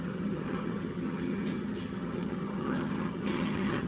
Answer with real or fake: fake